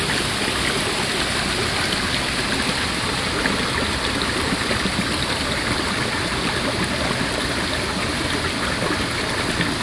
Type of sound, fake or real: real